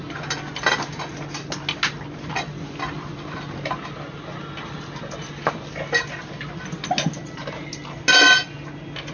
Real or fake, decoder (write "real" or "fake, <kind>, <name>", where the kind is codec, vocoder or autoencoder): real